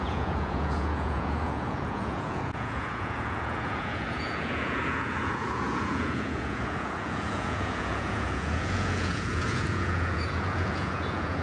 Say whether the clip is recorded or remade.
remade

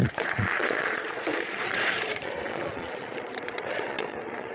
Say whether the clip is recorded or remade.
remade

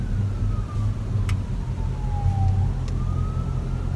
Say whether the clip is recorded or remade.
recorded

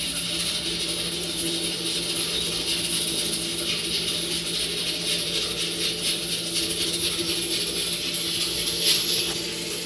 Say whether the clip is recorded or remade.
recorded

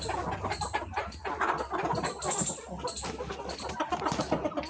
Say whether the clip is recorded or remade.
recorded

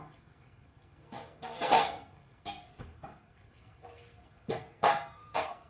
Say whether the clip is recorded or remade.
remade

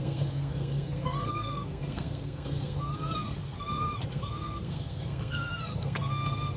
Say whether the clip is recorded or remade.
remade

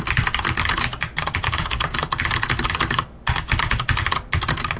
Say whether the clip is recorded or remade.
recorded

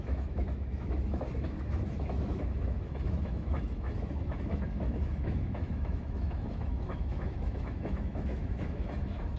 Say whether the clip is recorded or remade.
remade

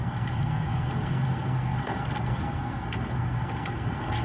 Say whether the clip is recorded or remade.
remade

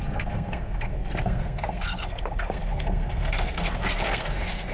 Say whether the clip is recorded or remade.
remade